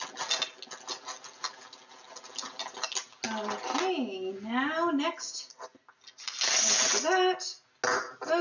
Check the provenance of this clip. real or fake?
real